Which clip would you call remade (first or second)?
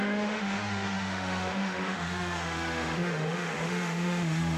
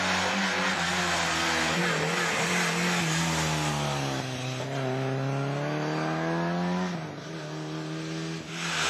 first